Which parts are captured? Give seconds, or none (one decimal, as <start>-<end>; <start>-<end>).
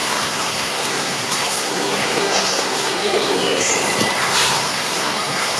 3.7-4.2